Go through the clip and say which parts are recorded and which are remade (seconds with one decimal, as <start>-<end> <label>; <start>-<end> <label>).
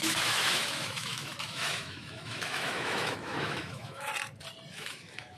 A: 0.0-4.1 remade; 4.1-4.7 recorded; 4.7-5.4 remade